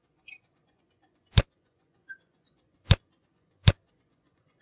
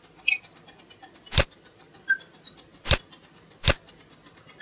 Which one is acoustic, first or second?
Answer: second